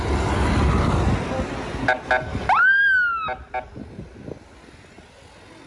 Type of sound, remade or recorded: recorded